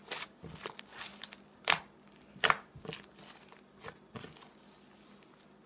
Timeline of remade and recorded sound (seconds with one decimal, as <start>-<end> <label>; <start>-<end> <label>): 0.0-5.7 recorded